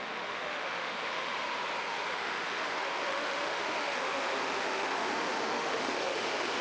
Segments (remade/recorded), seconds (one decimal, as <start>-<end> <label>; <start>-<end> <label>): 0.0-1.3 remade; 1.3-1.8 recorded; 1.8-6.6 remade